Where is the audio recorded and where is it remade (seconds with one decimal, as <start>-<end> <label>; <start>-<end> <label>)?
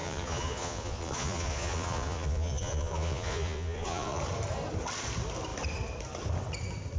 0.0-4.2 remade; 4.2-7.0 recorded